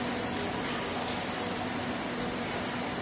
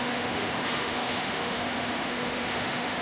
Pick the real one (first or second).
first